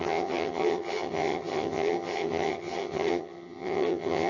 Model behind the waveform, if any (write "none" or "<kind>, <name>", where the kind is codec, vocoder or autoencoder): vocoder, HiFi-GAN